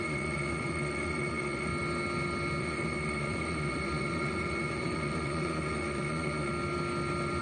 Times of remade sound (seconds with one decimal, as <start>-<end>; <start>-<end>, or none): 0.0-1.7; 2.6-6.5